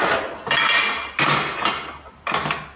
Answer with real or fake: real